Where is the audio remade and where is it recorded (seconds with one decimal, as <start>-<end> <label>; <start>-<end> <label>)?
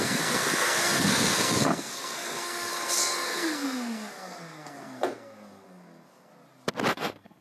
0.0-6.3 remade; 6.3-6.9 recorded; 6.9-7.4 remade